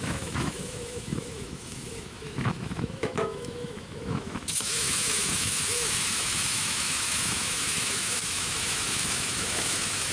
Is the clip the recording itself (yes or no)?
no